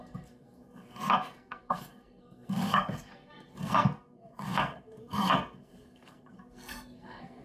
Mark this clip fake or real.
fake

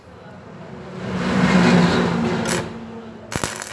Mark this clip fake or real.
real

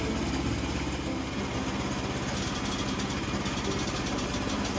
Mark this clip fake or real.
real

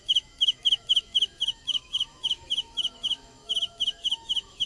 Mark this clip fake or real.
fake